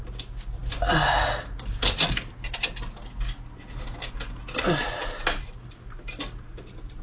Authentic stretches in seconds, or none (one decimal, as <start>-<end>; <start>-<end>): 0.0-7.0